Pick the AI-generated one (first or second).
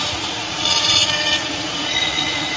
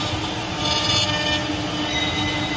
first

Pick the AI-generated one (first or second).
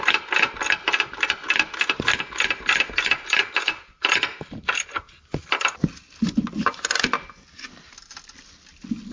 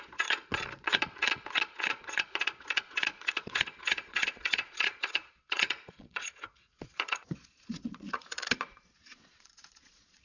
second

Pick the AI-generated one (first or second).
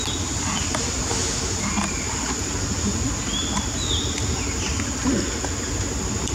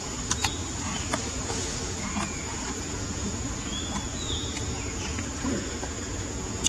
second